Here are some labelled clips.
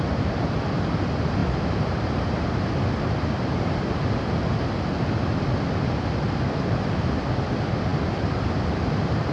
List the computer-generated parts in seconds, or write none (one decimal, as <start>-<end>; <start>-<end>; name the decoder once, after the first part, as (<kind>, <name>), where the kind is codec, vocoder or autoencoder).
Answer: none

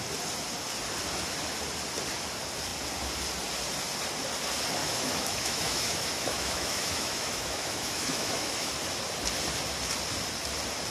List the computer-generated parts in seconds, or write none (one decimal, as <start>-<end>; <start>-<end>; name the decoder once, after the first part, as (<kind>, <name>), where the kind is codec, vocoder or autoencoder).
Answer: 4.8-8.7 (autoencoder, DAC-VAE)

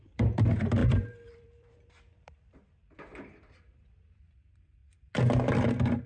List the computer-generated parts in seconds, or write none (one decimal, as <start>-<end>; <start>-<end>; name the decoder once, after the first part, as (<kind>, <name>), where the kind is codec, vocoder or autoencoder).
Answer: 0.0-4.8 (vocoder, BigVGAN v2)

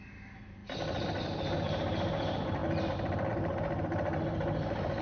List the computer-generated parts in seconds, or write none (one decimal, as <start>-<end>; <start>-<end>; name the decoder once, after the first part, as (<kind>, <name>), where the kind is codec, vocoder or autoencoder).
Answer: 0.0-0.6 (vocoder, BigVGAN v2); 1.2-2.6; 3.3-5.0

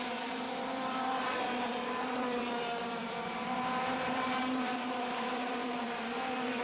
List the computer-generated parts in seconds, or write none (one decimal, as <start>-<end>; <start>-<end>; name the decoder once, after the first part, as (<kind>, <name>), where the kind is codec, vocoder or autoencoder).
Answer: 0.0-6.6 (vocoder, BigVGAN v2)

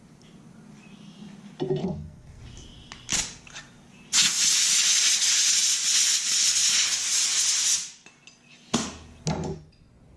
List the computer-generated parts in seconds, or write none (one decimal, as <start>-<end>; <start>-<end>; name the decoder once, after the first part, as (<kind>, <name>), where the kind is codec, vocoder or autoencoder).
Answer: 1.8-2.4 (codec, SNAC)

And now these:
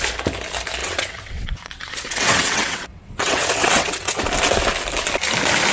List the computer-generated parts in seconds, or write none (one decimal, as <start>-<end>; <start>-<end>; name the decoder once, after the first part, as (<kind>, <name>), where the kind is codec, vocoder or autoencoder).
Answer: 0.8-4.2 (vocoder, WaveNeXt)